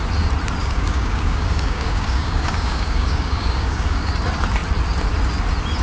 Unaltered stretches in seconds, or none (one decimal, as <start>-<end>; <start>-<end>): 0.0-0.6; 4.1-5.8